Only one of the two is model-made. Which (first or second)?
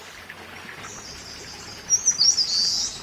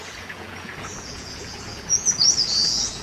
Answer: second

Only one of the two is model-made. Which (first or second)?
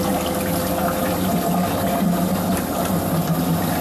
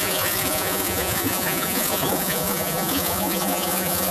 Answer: second